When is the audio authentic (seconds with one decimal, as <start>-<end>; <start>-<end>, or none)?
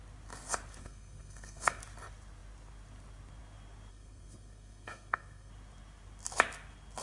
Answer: 0.0-0.8; 1.8-3.9; 5.5-7.0